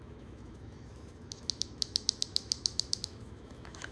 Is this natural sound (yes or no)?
no